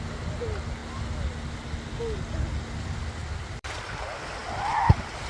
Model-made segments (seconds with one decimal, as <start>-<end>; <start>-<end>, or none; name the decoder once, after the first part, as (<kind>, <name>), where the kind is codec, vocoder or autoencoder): 3.2-3.9 (vocoder, BigVGAN v2)